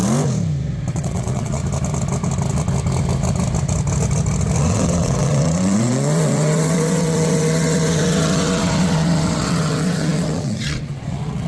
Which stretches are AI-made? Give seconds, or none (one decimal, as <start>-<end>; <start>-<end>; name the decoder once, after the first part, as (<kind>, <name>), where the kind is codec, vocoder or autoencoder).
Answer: 0.9-1.6 (vocoder, WaveNeXt); 4.6-11.5